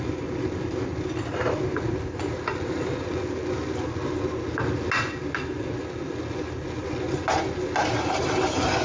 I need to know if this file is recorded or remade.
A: recorded